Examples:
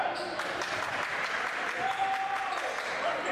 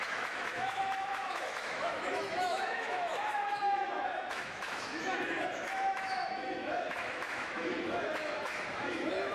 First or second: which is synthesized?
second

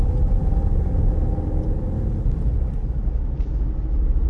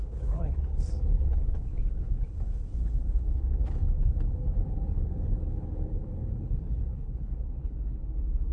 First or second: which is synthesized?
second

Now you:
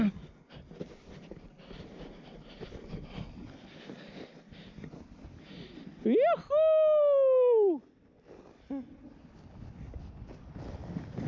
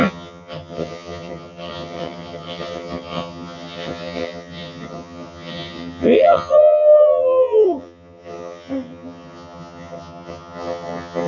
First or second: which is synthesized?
second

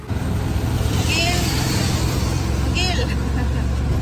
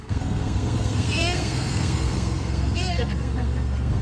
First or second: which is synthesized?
second